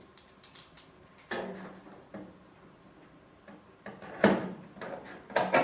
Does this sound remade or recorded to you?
remade